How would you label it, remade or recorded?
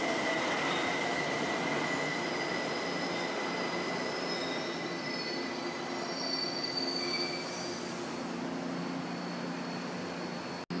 recorded